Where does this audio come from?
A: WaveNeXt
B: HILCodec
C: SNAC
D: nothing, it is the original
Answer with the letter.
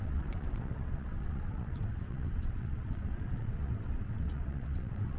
A